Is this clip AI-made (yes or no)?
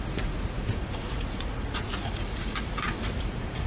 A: yes